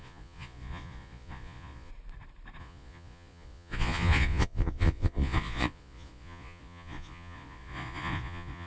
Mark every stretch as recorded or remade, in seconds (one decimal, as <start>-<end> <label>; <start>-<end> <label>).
0.0-1.9 remade; 1.9-2.6 recorded; 2.6-8.7 remade